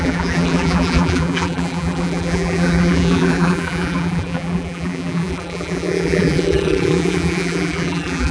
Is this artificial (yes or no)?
yes